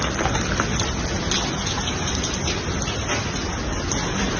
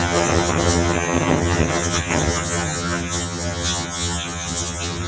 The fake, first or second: second